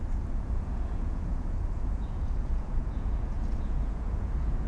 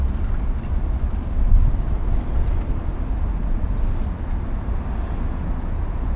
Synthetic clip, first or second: first